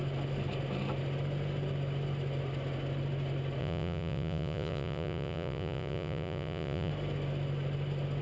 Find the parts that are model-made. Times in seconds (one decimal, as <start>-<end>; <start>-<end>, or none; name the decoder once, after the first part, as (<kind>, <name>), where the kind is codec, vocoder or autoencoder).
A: 3.6-6.9 (vocoder, Vocos)